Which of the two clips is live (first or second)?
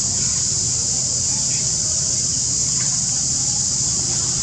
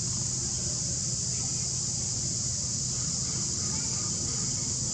first